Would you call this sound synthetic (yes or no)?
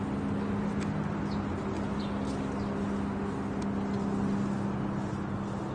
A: no